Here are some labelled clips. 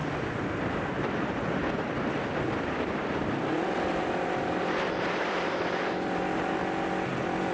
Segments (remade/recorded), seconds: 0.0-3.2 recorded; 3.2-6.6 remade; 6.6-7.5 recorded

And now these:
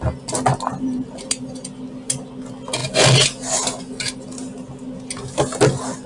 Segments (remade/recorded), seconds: 0.0-0.7 recorded; 0.7-1.3 remade; 1.3-6.1 recorded

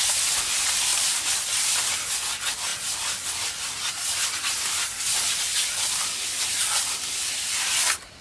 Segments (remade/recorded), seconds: 0.0-0.9 recorded; 0.9-1.9 remade; 1.9-2.7 recorded; 2.7-3.9 remade; 3.9-5.5 recorded; 5.5-6.1 remade; 6.1-8.2 recorded

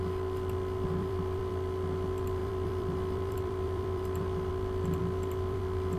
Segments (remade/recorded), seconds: 0.0-1.0 recorded; 1.0-1.5 remade; 1.5-2.4 recorded; 2.4-4.5 remade; 4.5-5.0 recorded; 5.0-5.6 remade; 5.6-6.0 recorded

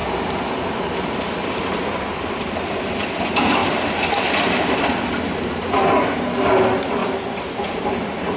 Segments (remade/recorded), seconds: 0.0-1.8 remade; 1.8-3.6 recorded; 3.6-4.3 remade; 4.3-7.0 recorded; 7.0-8.4 remade